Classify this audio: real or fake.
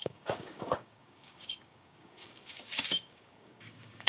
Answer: fake